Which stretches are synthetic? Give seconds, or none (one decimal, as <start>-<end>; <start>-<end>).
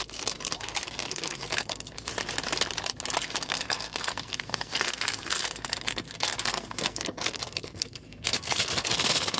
0.0-2.1; 3.2-9.4